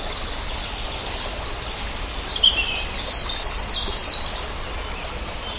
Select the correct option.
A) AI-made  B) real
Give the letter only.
B